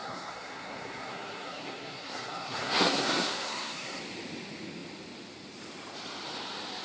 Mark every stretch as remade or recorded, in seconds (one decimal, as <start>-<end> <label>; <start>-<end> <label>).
0.0-4.0 remade; 4.0-6.8 recorded